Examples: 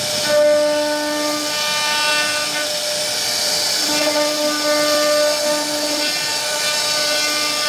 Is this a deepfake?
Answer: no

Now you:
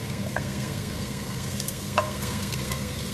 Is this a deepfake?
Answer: yes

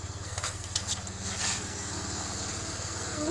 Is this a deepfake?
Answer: yes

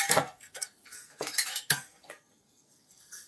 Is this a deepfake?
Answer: yes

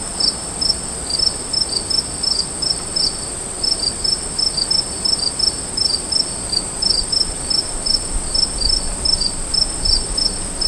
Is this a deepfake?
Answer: no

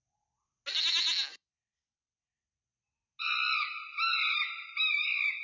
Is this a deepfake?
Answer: no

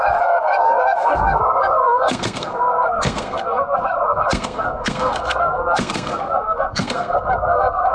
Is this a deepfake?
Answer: yes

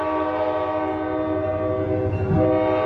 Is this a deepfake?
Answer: no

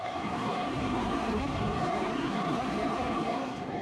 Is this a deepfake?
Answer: yes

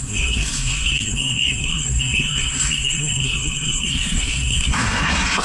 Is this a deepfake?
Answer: yes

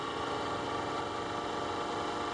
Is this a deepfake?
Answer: no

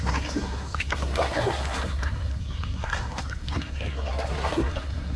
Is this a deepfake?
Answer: yes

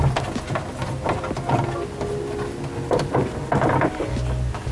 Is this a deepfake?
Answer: no